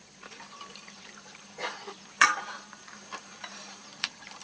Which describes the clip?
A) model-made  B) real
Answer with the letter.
A